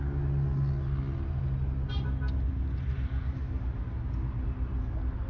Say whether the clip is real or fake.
real